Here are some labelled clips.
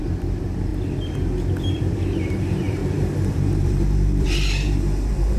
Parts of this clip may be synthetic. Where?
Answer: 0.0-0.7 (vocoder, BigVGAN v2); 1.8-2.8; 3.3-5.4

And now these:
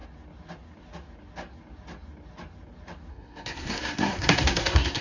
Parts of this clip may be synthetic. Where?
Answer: 3.1-5.0 (codec, SNAC)

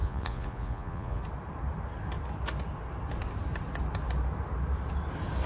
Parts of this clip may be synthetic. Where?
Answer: 0.0-1.2 (vocoder, Vocos)

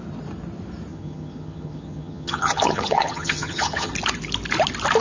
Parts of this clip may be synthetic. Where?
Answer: 0.9-3.9 (vocoder, HiFi-GAN)

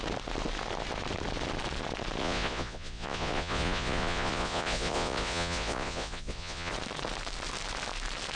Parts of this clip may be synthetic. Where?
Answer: 2.2-6.7 (vocoder, Vocos)

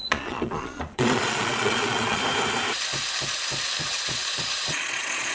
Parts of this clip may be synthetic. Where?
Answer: 0.0-2.2 (vocoder, Vocos); 3.8-5.3